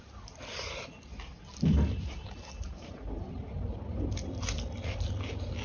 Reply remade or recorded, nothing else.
recorded